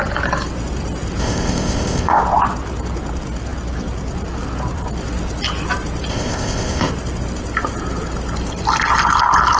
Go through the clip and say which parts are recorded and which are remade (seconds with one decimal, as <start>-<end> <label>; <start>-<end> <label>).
0.0-1.2 recorded; 1.2-2.2 remade; 2.2-6.1 recorded; 6.1-6.9 remade; 6.9-9.6 recorded